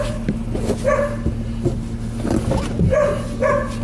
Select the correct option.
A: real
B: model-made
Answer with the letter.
A